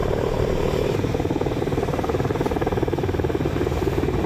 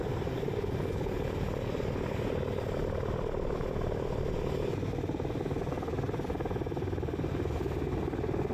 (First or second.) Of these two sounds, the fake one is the first